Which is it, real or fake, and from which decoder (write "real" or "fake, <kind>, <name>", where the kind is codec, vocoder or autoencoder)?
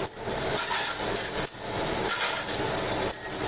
real